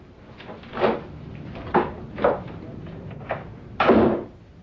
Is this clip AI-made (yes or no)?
no